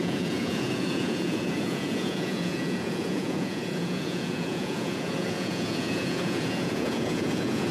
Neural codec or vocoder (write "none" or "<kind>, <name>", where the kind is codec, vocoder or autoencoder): vocoder, Vocos